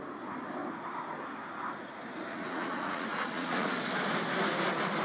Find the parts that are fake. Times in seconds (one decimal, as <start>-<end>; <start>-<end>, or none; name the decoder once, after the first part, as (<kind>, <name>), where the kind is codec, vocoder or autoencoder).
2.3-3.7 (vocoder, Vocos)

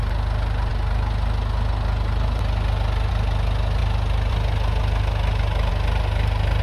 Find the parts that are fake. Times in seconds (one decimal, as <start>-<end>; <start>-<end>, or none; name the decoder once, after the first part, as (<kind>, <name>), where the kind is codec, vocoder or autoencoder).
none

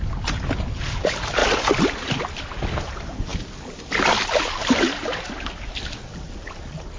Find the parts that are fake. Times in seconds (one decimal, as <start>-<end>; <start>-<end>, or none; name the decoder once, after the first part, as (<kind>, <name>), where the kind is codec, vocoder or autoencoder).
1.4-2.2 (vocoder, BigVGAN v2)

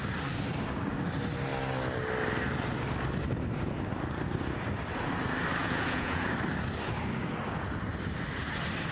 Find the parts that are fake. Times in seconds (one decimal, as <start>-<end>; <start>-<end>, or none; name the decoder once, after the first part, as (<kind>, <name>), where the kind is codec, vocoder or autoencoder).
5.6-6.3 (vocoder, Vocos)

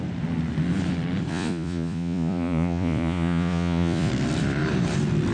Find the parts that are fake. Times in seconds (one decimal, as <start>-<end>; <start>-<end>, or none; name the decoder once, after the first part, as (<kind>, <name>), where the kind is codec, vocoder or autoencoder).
1.3-4.1 (vocoder, Vocos)

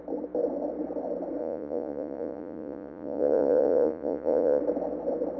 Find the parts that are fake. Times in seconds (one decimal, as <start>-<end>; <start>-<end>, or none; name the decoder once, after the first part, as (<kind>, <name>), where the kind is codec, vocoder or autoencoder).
1.4-4.6 (vocoder, Vocos)